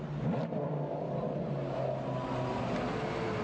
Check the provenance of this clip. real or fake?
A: real